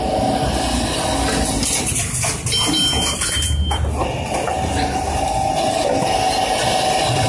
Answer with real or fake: real